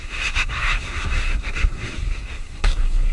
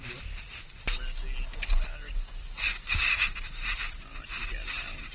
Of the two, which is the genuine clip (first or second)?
second